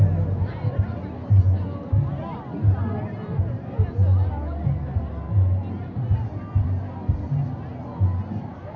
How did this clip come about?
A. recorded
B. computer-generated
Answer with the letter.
A